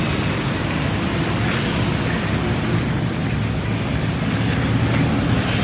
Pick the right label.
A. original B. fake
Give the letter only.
A